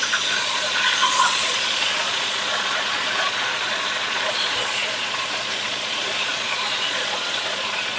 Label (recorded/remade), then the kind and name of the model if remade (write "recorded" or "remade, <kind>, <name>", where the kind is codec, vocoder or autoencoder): remade, vocoder, Vocos